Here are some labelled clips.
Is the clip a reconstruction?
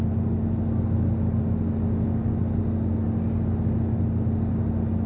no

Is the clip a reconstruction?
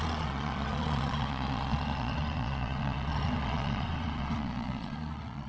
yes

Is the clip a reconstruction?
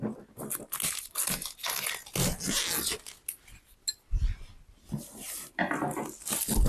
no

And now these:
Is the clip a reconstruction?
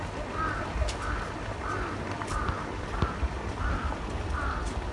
no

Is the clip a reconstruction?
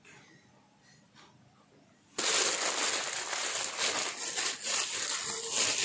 no